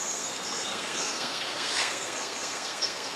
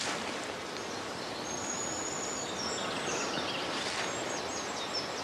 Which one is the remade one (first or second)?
first